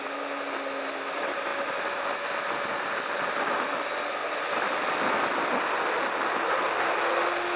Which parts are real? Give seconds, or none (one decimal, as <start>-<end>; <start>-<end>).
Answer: 0.0-7.6